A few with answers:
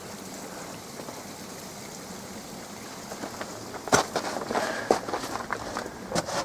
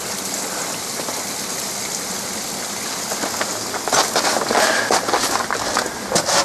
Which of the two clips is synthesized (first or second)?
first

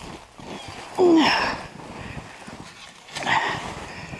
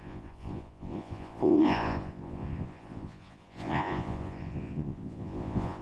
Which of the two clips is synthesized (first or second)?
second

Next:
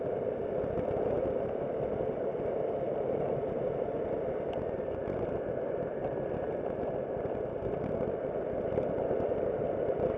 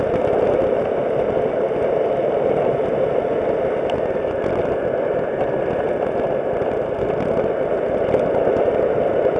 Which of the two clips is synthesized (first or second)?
first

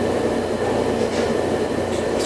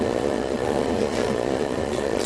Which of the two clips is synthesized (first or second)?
second